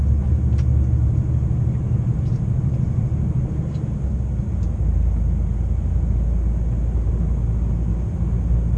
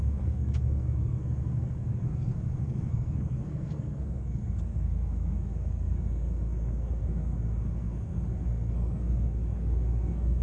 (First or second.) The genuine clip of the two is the first